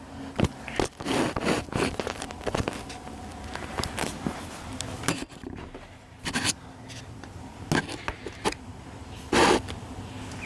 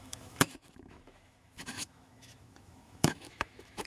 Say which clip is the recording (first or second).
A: first